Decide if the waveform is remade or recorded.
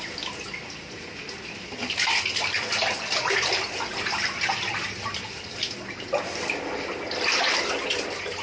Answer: recorded